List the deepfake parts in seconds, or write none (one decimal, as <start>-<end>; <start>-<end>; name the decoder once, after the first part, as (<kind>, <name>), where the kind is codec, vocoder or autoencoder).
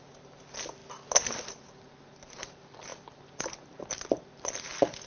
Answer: none